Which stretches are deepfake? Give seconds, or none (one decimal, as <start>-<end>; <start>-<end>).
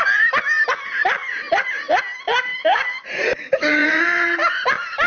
1.0-2.0; 2.6-5.1